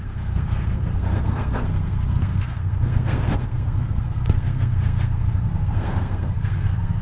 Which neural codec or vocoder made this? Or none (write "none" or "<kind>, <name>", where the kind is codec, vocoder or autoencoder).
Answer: codec, SNAC